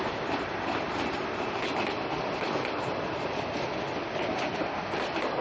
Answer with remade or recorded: recorded